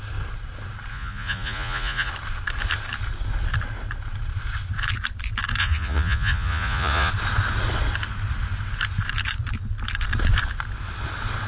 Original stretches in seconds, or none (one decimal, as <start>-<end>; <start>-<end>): 0.0-0.9; 2.1-5.6; 7.1-11.5